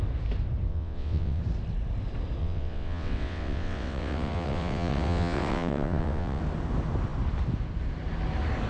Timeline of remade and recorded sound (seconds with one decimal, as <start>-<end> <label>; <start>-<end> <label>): 0.0-0.7 recorded; 0.7-1.4 remade; 1.4-2.4 recorded; 2.4-6.4 remade; 6.4-8.7 recorded